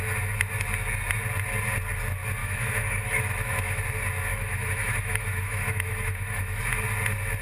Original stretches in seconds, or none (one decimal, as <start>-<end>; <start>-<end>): 0.0-2.4; 3.8-4.3; 6.6-7.4